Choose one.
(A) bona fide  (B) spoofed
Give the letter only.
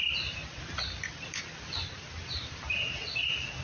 A